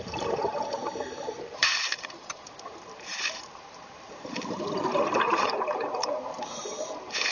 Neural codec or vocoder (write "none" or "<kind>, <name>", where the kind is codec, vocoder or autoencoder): vocoder, BigVGAN v2